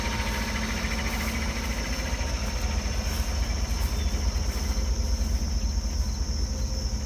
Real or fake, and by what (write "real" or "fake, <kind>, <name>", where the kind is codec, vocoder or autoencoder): real